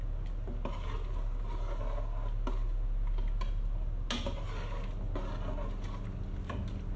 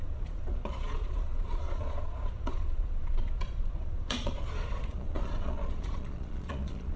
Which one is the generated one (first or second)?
second